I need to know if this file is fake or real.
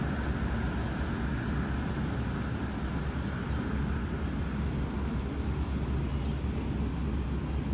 real